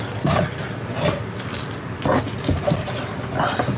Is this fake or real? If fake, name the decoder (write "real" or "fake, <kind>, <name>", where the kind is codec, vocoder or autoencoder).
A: real